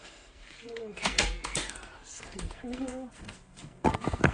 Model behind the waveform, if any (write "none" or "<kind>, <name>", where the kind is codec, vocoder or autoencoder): codec, SNAC